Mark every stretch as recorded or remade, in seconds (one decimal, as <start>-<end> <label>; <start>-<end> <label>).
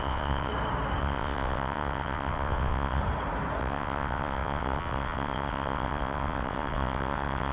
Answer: 0.0-0.5 remade; 0.5-1.0 recorded; 1.0-3.0 remade; 3.0-3.6 recorded; 3.6-7.5 remade